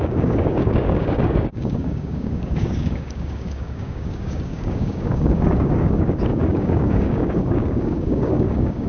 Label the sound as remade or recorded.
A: remade